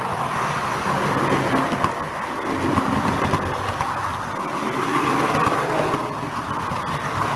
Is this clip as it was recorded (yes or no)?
yes